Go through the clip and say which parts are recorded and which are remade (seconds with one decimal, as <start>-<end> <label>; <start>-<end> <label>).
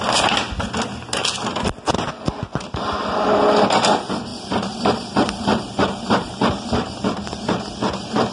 0.0-2.5 recorded; 2.5-3.6 remade; 3.6-4.3 recorded; 4.3-7.0 remade; 7.0-8.3 recorded